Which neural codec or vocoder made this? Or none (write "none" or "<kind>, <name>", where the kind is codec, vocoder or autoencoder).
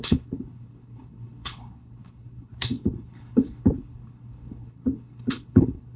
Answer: codec, HILCodec